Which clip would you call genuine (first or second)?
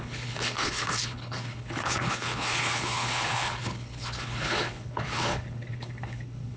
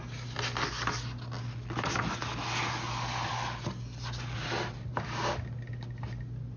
second